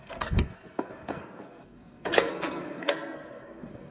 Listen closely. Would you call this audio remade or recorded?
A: remade